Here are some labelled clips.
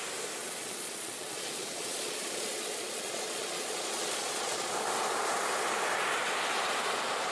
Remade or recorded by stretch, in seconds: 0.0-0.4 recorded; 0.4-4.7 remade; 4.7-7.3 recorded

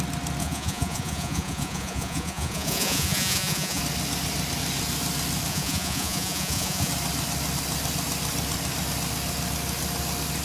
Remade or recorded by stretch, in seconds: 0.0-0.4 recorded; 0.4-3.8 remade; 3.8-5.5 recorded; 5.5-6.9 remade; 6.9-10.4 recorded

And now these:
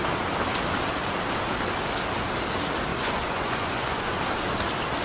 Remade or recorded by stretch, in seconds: 0.0-2.9 recorded; 2.9-4.2 remade; 4.2-5.0 recorded